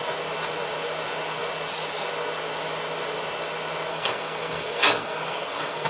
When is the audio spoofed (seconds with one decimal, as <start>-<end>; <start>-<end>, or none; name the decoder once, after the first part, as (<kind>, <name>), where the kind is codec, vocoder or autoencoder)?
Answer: 3.9-5.9 (codec, SNAC)